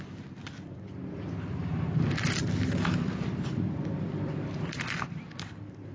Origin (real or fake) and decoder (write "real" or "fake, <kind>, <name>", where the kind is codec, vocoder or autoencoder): real